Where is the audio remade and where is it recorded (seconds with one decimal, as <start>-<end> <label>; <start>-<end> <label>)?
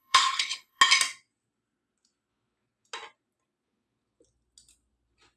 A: 0.0-0.8 remade; 0.8-5.4 recorded